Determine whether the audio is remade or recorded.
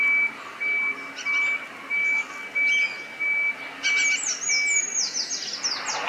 recorded